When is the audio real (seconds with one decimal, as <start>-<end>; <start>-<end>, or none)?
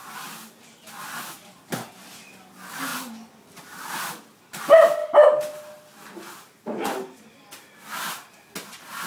0.0-9.1